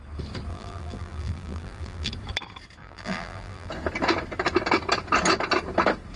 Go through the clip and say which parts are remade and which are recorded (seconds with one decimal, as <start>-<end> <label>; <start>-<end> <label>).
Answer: 0.0-0.5 recorded; 0.5-2.1 remade; 2.1-2.8 recorded; 2.8-3.7 remade; 3.7-6.2 recorded